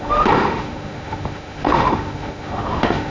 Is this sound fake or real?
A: fake